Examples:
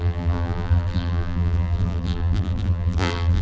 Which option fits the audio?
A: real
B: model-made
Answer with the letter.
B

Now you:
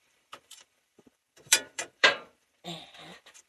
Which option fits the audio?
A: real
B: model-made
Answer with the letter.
B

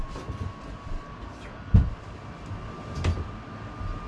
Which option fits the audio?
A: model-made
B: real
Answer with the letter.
B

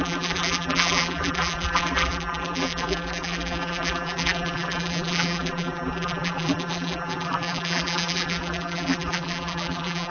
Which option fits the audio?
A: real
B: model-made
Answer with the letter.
B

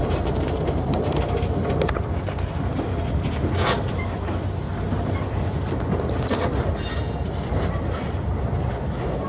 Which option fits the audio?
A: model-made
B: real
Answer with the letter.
A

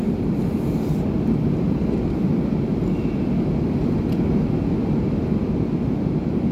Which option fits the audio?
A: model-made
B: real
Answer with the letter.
B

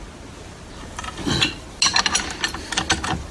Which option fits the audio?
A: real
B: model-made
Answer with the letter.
A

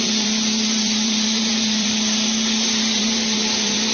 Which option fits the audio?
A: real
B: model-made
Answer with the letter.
B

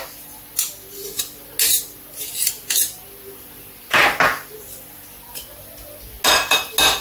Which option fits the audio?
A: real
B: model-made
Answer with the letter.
A